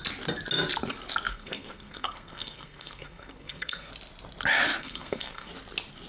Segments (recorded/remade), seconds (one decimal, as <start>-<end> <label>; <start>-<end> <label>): 0.0-1.3 recorded; 1.3-3.9 remade; 3.9-4.8 recorded; 4.8-5.5 remade; 5.5-6.1 recorded